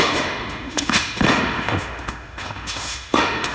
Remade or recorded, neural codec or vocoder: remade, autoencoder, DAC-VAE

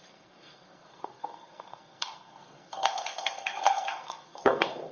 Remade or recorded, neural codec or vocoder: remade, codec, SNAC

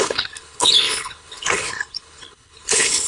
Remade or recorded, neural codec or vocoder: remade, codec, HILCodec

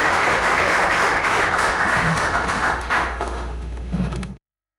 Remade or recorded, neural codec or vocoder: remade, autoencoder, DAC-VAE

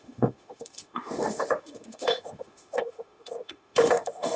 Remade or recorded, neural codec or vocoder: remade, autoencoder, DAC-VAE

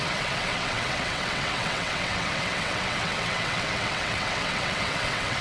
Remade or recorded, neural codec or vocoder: remade, vocoder, WaveNeXt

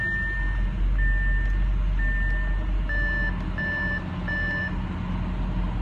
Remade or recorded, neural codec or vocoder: recorded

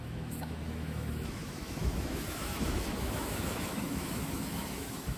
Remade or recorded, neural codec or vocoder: remade, autoencoder, DAC-VAE